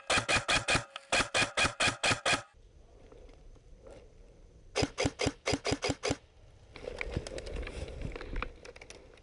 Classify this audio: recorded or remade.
recorded